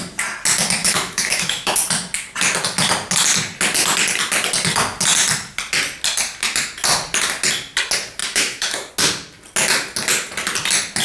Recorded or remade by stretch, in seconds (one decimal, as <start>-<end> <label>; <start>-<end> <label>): 0.0-0.8 recorded; 0.8-1.8 remade; 1.8-8.2 recorded; 8.2-8.9 remade; 8.9-11.0 recorded